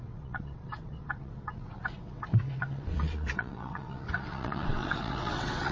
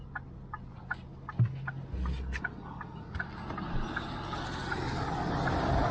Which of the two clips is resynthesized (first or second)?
first